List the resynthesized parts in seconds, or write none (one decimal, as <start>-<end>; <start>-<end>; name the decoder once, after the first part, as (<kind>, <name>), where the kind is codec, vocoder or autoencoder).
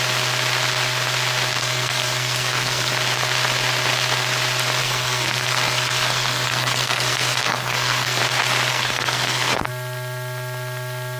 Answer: 1.6-2.9 (codec, SNAC); 4.8-8.2; 8.7-9.7